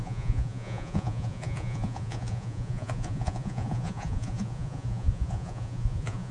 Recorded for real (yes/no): no